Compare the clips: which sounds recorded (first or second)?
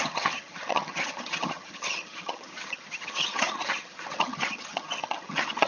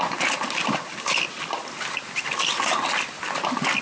second